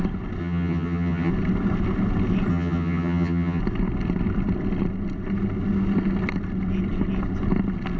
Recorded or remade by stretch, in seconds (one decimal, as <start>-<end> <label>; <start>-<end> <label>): 0.0-0.4 recorded; 0.4-1.3 remade; 1.3-2.5 recorded; 2.5-3.6 remade; 3.6-8.0 recorded